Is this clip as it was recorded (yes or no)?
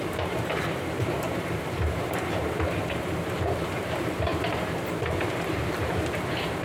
no